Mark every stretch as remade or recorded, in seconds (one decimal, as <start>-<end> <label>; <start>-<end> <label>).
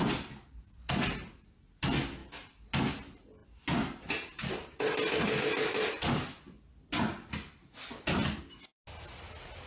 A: 0.0-9.7 recorded